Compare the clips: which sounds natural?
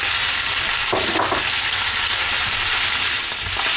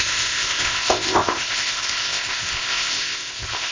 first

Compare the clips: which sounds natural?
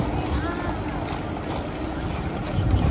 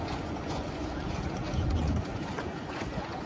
first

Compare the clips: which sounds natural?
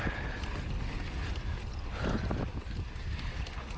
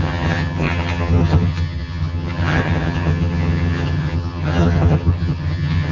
first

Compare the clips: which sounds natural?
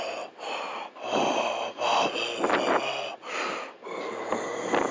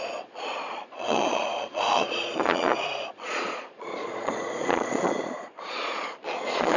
first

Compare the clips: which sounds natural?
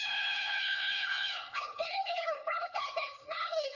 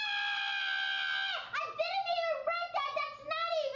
second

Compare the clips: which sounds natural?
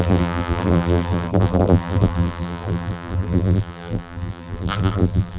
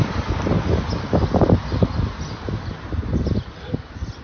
second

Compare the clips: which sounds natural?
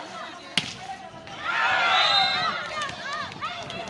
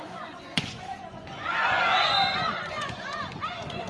first